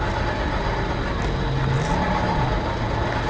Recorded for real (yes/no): yes